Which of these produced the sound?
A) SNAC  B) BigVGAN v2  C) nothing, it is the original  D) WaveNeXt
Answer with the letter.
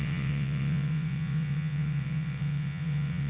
D